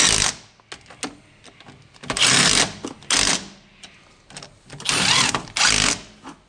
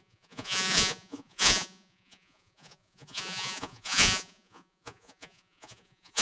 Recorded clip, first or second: first